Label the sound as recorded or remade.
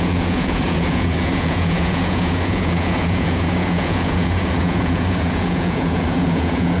remade